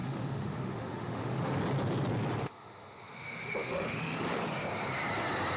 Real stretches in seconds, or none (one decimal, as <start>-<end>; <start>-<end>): 1.6-2.4; 4.4-5.6